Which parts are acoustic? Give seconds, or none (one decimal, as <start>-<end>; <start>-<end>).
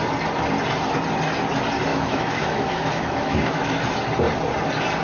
0.0-1.9; 3.8-5.0